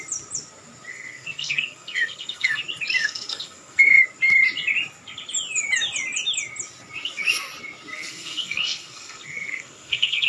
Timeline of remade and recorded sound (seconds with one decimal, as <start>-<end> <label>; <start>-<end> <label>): 0.0-0.9 recorded; 0.9-2.6 remade; 2.6-3.0 recorded; 3.0-4.0 remade; 4.0-7.9 recorded; 7.9-10.3 remade